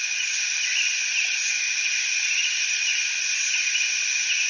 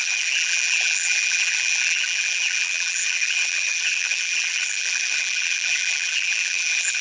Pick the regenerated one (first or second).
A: second